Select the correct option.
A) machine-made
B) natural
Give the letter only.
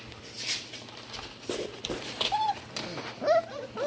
B